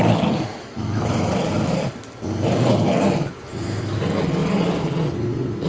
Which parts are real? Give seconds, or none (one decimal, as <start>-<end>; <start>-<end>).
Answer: 0.0-0.5; 1.3-5.7